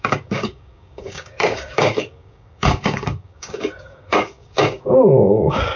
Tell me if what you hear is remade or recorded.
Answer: remade